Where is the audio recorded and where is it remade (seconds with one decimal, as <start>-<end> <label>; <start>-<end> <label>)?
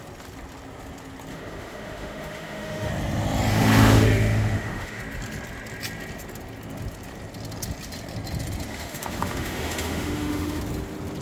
0.0-1.3 recorded; 1.3-2.9 remade; 2.9-3.5 recorded; 3.5-5.0 remade; 5.0-8.7 recorded; 8.7-10.6 remade; 10.6-11.2 recorded